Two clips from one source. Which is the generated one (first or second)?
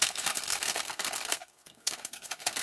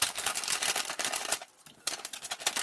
first